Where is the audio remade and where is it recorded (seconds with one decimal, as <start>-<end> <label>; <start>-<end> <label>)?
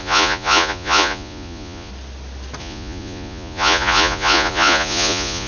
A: 0.0-1.9 remade; 1.9-2.6 recorded; 2.6-5.5 remade